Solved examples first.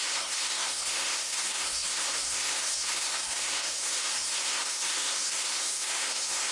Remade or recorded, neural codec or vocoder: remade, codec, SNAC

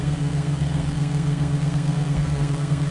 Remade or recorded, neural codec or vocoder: remade, codec, SNAC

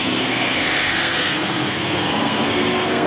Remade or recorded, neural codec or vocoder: remade, codec, SNAC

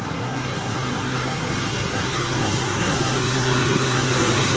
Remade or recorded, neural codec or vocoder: remade, codec, SNAC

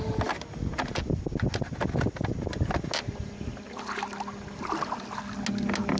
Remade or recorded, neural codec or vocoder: recorded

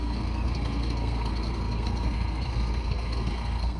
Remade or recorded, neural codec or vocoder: remade, codec, SNAC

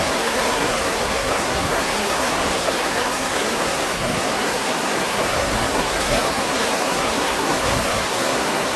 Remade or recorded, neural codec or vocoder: remade, codec, SNAC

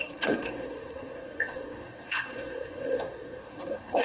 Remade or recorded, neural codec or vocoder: remade, codec, SNAC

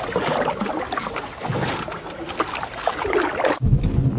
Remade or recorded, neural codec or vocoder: recorded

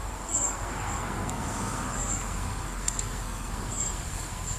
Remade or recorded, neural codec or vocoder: remade, codec, SNAC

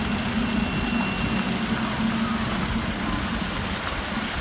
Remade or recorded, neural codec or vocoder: recorded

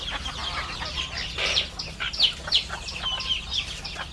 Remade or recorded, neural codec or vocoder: recorded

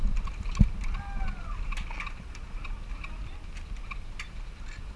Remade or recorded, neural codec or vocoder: recorded